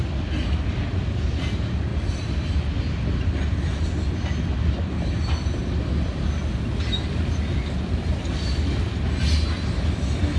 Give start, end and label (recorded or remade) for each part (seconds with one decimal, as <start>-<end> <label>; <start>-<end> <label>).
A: 0.0-10.4 recorded